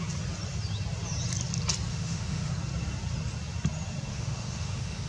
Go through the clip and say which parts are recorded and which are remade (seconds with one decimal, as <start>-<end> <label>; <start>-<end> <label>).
0.0-1.9 recorded; 1.9-2.5 remade; 2.5-4.1 recorded; 4.1-5.1 remade